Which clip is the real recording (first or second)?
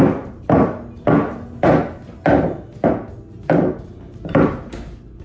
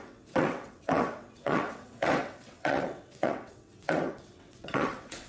first